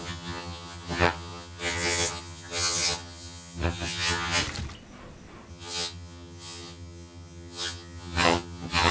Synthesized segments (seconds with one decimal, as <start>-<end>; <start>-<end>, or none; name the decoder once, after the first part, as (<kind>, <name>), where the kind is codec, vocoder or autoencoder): 0.0-4.4 (vocoder, HiFi-GAN); 5.5-8.9